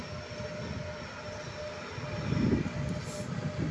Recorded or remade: recorded